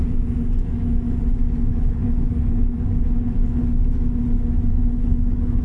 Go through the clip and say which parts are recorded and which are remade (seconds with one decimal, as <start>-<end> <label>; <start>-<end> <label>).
0.0-1.7 recorded; 1.7-3.8 remade; 3.8-4.7 recorded; 4.7-5.6 remade